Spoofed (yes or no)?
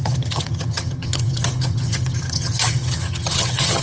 yes